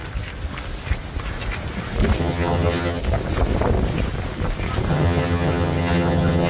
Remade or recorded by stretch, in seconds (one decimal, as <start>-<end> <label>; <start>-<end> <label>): 0.0-2.2 recorded; 2.2-3.0 remade; 3.0-4.9 recorded; 4.9-6.5 remade